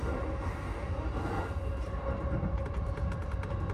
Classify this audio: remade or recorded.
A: recorded